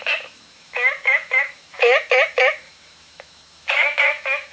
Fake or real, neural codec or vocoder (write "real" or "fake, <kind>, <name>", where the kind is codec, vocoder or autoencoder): fake, autoencoder, DAC-VAE